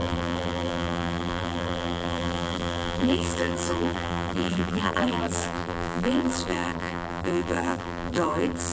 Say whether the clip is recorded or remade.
remade